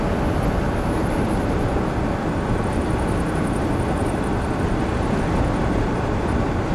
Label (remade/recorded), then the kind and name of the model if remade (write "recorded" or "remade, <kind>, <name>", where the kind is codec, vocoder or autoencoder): recorded